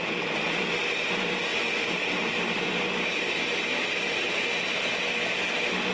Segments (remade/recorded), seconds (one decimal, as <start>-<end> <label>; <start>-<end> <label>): 0.0-0.6 remade; 0.6-1.5 recorded; 1.5-5.0 remade; 5.0-5.9 recorded